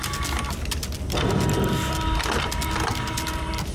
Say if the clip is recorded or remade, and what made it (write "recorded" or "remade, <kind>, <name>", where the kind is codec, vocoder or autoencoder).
recorded